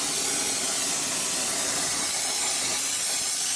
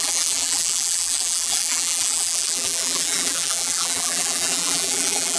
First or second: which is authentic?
first